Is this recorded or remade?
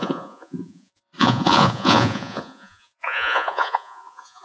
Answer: remade